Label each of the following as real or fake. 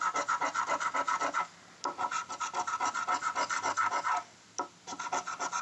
real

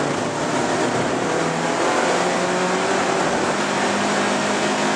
real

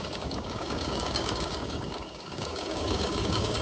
fake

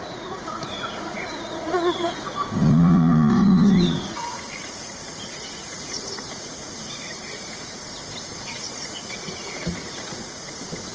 fake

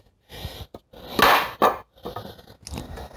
real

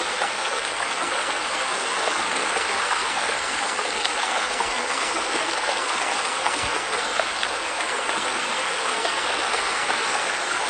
fake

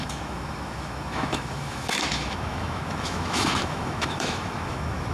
fake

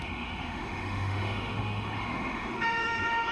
fake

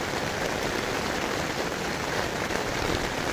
fake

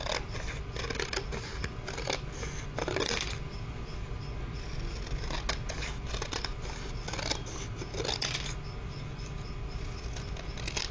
real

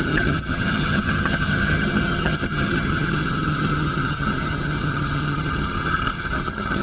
fake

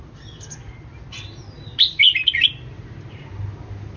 real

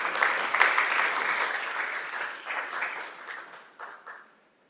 real